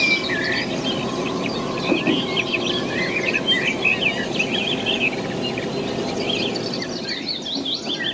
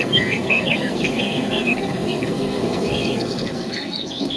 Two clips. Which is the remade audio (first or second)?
second